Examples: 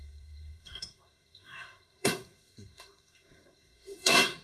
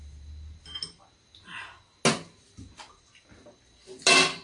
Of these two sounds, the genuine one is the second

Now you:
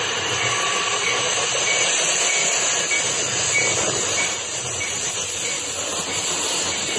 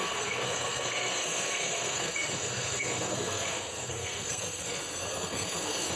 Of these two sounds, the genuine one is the first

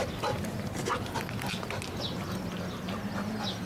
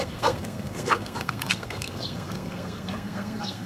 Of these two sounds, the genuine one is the first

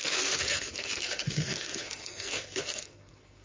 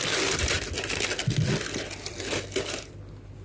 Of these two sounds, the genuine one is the second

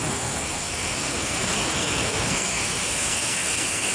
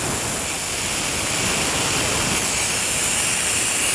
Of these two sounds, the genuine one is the second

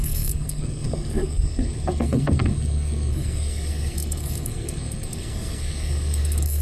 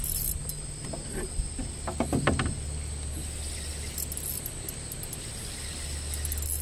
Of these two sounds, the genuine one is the second